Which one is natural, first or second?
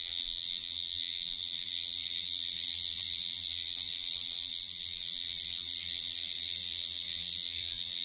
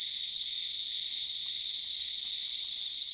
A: second